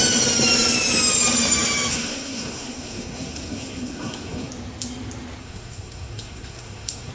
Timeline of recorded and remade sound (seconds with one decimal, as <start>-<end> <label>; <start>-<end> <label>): 0.0-1.9 recorded; 1.9-4.5 remade; 4.5-5.4 recorded; 5.4-7.1 remade